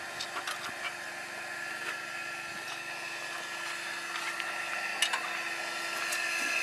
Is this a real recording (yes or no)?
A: yes